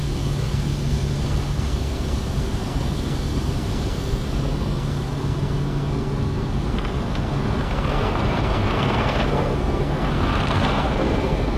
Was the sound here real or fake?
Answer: fake